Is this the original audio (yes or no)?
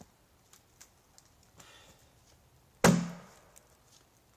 yes